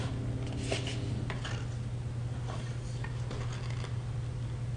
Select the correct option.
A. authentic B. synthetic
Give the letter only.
A